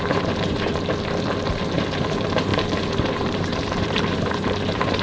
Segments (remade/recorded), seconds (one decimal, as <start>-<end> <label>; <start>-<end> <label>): 0.0-0.7 remade; 0.7-1.5 recorded; 1.5-5.0 remade